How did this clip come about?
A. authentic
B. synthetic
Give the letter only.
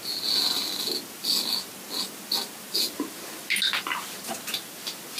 A